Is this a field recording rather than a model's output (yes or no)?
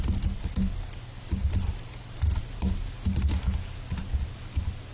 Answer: yes